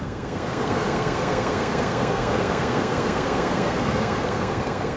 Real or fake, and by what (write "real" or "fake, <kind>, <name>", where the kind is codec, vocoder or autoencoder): fake, codec, SNAC